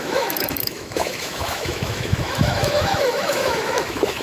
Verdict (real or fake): fake